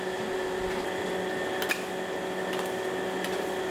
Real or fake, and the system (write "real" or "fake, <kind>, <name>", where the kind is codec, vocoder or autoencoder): real